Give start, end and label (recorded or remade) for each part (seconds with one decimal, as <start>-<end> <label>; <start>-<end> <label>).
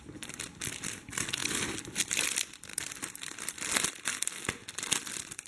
0.0-5.5 recorded